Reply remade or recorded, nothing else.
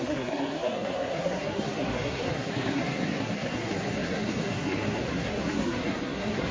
remade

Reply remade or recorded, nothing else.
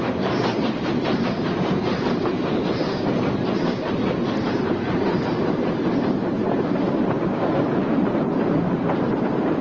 remade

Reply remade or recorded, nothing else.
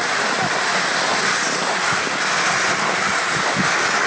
recorded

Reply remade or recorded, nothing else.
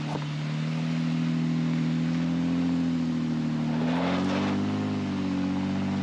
recorded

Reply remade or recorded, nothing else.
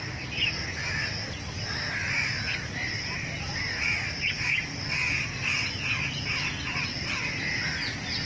recorded